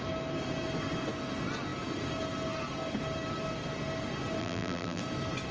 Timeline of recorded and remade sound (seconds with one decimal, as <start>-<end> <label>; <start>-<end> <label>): 0.0-4.4 recorded; 4.4-5.0 remade; 5.0-5.5 recorded